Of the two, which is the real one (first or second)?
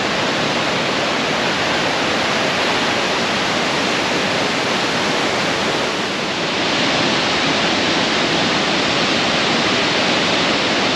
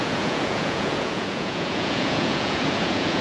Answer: first